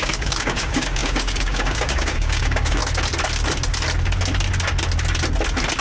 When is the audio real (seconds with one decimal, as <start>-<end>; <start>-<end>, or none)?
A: 2.8-5.8